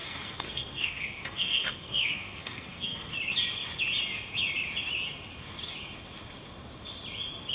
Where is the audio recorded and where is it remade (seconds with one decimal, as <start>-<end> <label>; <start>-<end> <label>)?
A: 0.0-3.1 remade; 3.1-7.5 recorded